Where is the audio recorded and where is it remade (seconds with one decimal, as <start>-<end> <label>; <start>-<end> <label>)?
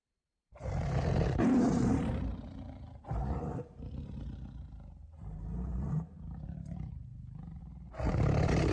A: 0.0-7.1 remade; 7.1-7.6 recorded; 7.6-8.7 remade